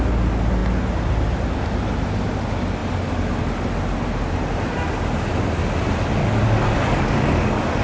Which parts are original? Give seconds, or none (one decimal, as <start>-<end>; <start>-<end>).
0.0-6.2